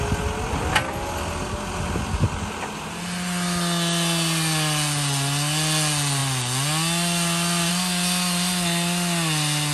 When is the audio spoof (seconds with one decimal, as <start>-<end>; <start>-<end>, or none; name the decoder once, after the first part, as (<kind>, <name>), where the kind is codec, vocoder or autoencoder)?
none